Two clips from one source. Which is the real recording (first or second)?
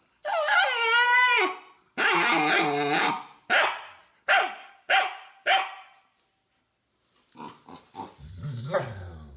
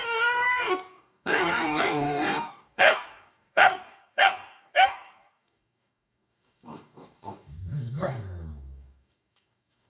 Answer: first